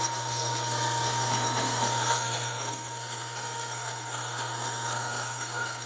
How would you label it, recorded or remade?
remade